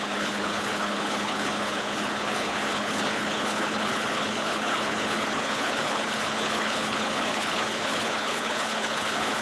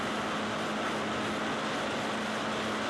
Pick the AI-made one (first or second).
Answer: first